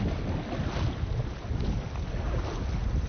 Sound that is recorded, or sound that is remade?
recorded